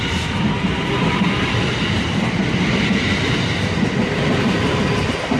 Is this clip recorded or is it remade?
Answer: recorded